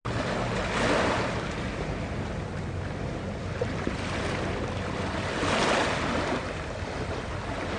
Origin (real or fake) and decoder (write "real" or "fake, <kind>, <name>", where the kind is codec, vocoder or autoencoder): real